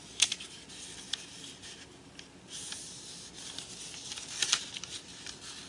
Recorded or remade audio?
recorded